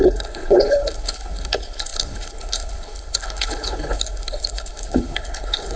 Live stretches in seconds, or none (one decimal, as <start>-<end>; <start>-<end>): none